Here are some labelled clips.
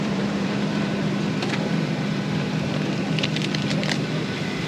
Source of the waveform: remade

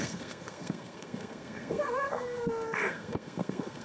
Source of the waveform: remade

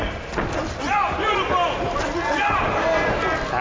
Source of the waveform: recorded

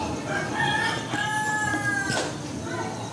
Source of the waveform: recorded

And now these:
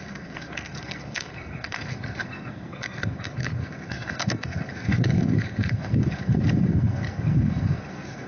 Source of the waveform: remade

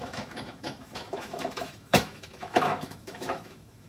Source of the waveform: remade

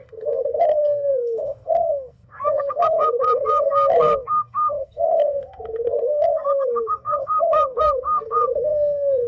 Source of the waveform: remade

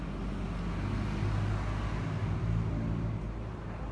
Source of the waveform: recorded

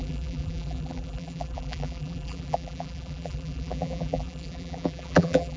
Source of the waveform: remade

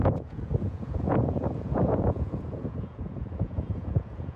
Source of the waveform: remade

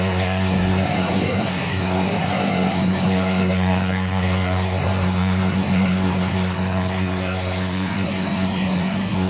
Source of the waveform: remade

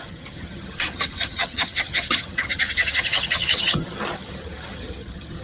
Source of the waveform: remade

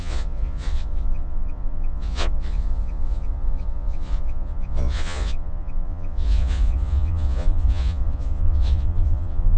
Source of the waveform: remade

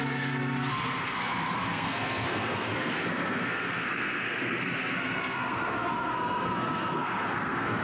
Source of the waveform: remade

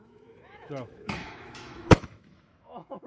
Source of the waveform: remade